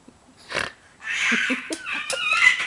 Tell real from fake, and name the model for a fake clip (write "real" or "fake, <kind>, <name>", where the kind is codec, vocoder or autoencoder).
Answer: fake, vocoder, BigVGAN v2